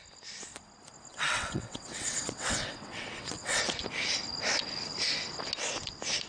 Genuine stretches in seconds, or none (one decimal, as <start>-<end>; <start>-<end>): 0.0-1.1; 3.6-6.3